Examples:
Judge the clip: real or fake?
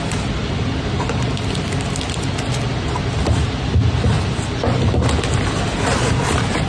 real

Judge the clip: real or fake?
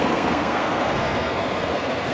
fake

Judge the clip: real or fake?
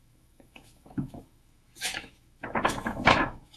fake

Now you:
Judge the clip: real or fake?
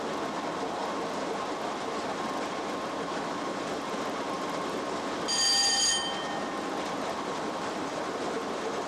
real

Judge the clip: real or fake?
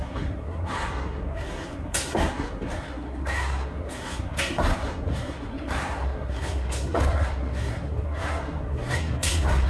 fake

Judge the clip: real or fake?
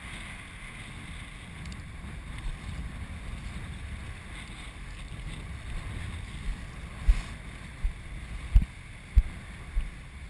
real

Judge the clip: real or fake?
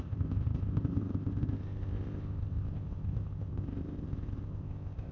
fake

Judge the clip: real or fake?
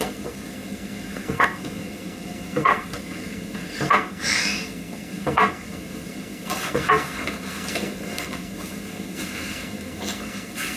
fake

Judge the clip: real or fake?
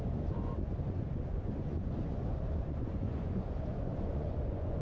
fake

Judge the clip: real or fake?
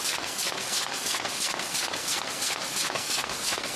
fake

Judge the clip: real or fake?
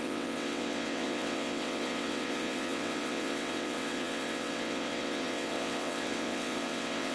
fake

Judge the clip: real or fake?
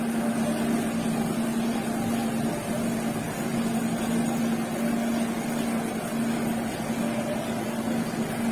real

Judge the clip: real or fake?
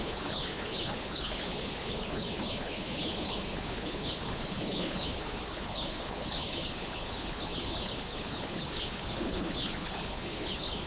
fake